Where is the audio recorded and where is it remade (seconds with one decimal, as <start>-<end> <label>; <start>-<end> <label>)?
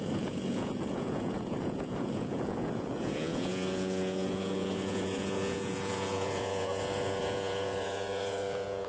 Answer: 0.0-8.9 remade